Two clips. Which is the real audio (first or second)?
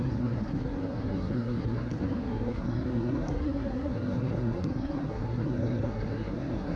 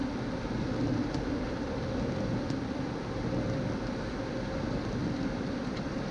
second